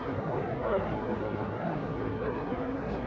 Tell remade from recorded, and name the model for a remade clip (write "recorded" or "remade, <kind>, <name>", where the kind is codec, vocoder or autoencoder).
remade, codec, SNAC